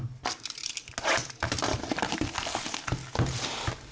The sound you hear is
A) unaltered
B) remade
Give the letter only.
A